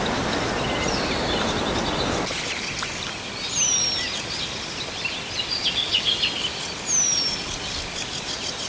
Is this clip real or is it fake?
real